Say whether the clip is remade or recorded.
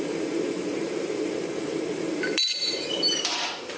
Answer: remade